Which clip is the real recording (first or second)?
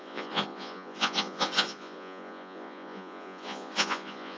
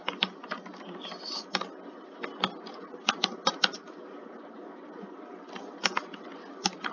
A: second